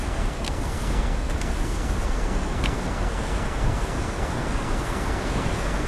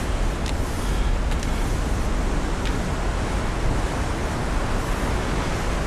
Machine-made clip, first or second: first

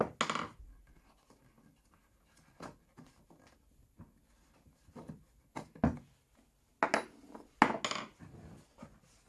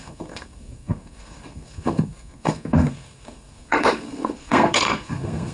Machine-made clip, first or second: second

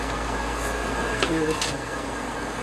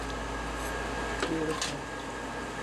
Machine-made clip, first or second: first